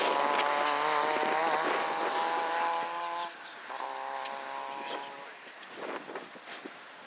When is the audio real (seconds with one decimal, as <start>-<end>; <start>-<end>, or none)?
0.0-7.1